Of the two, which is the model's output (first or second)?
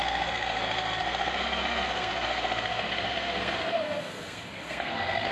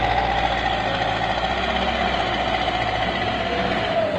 first